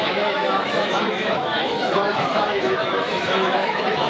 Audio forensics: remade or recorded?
remade